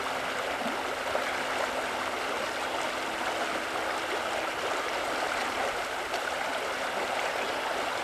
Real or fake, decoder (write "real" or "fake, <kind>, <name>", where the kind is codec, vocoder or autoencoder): real